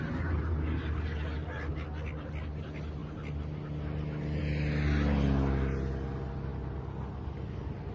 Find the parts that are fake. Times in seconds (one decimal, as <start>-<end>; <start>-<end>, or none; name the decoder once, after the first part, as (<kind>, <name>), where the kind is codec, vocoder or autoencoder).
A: none